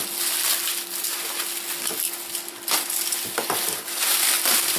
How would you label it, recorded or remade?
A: recorded